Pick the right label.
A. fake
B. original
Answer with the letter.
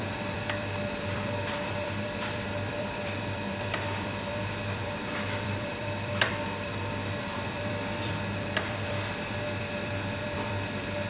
A